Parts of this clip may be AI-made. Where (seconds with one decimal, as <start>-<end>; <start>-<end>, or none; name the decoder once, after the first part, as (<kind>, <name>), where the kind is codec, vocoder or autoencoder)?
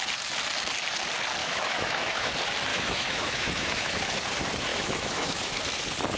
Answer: 1.4-2.3 (autoencoder, DAC-VAE); 2.7-4.0; 4.7-5.6